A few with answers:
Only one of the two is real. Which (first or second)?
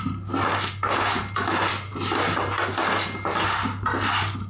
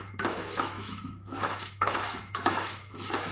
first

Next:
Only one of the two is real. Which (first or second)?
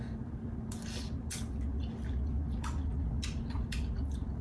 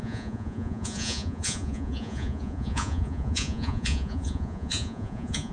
first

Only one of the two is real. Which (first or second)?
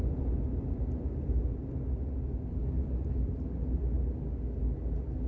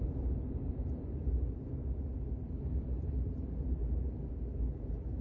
first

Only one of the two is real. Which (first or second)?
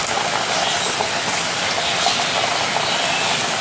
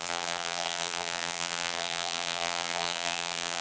first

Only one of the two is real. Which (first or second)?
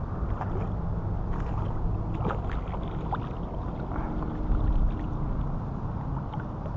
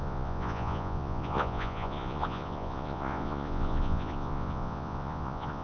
first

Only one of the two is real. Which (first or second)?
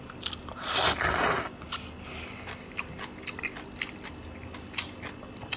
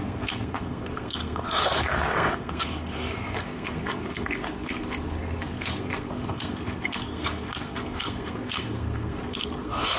first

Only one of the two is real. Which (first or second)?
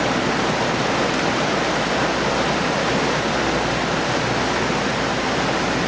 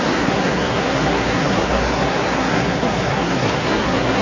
first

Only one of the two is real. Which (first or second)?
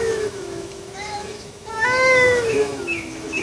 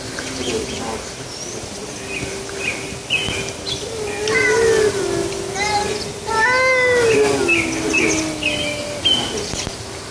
second